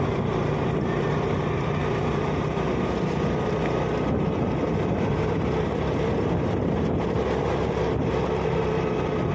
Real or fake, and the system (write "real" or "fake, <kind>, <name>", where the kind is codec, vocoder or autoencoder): real